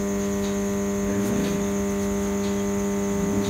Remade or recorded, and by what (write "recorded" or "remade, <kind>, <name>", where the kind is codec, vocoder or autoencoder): recorded